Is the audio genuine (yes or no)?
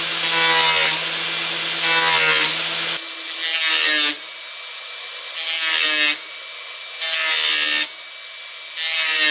yes